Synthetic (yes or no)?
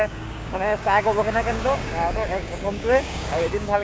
yes